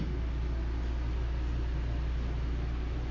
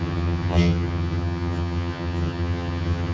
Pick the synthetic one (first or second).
second